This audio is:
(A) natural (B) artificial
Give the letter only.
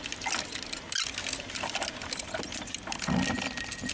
A